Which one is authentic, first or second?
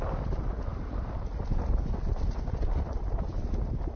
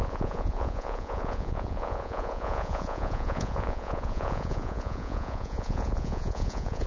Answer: first